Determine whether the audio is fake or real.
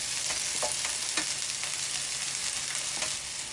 real